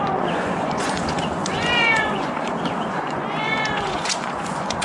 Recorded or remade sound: remade